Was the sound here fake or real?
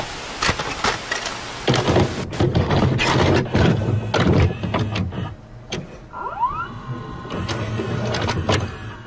real